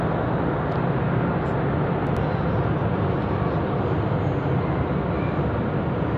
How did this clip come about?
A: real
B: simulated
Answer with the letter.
A